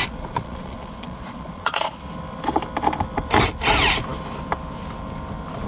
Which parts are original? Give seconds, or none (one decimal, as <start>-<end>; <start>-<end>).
2.0-5.7

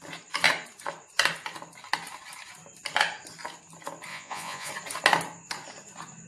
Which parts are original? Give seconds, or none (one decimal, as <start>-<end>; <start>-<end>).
0.0-4.1; 4.7-6.3

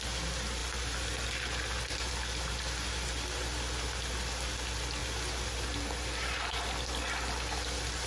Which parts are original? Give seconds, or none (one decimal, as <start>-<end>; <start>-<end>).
0.0-8.1

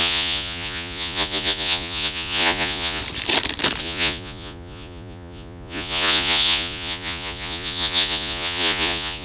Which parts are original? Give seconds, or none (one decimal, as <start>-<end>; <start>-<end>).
3.0-3.8

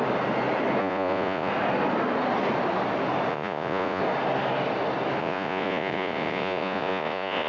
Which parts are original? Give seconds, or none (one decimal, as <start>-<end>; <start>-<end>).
0.0-0.8; 1.5-3.3; 4.0-5.2

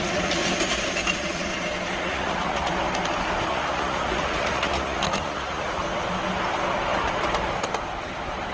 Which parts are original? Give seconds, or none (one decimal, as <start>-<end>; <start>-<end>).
0.4-1.1; 1.5-2.0; 2.7-3.5; 5.8-8.5

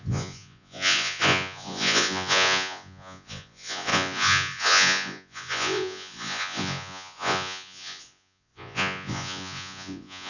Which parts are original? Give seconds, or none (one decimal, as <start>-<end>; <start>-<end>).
none

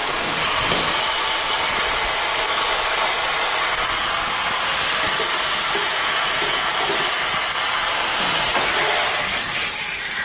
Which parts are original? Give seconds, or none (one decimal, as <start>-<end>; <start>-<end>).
0.0-5.8; 6.7-10.2